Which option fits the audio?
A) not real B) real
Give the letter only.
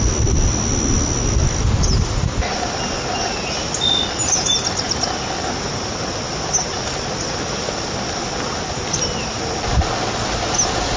B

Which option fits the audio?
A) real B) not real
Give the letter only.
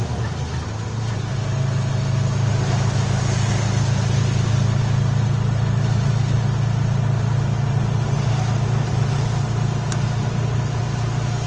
A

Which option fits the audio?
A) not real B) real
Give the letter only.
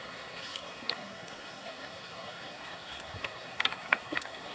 A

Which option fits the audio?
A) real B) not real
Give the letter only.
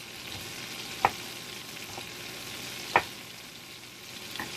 A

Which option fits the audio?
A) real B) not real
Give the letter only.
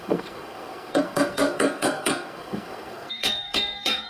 B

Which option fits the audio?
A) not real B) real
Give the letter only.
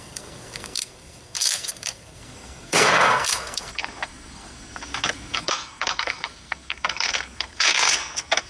A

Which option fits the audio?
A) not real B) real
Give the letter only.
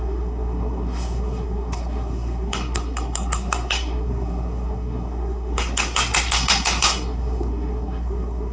A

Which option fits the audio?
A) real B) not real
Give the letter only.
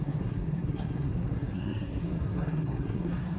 B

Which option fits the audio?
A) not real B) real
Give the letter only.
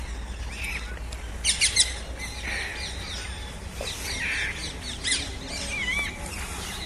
B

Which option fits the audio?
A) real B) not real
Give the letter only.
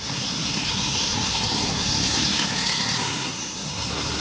B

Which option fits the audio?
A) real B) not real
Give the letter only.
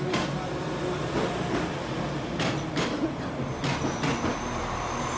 A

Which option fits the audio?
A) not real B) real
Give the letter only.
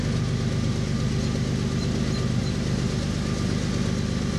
B